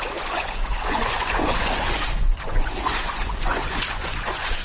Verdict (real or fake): fake